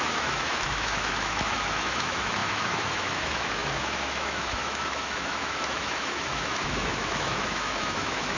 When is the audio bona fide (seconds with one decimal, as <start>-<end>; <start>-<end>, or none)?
none